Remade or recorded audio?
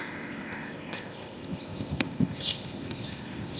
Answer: remade